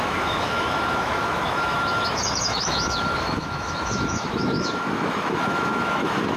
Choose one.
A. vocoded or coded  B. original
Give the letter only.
A